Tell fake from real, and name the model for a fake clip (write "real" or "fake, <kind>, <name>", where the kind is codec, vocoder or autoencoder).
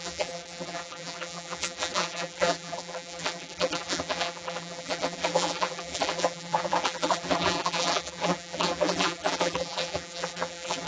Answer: fake, vocoder, BigVGAN v2